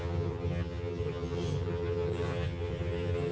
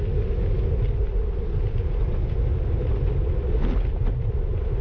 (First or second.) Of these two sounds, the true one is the second